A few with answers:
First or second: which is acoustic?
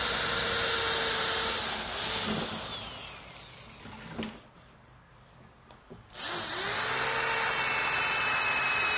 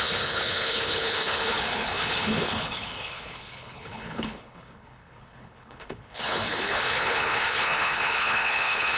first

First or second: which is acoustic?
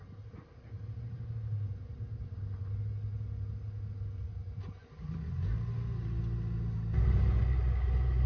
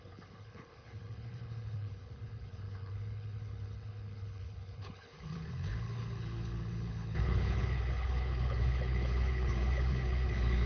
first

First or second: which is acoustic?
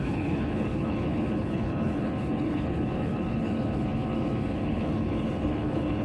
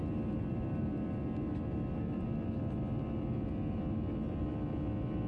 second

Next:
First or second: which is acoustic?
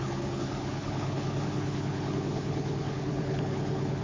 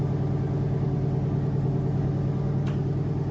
second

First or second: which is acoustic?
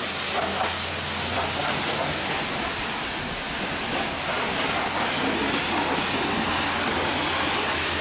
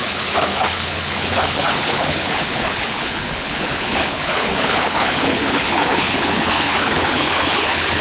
first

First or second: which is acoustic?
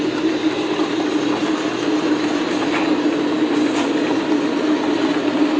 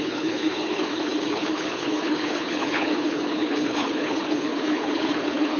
first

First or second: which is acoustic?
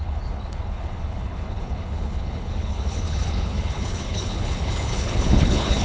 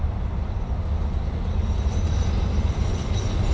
second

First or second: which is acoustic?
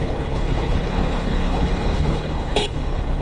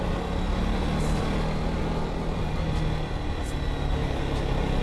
second